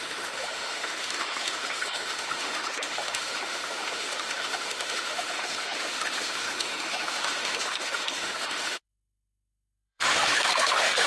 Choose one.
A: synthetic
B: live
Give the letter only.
A